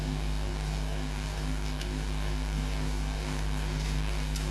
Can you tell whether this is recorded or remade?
remade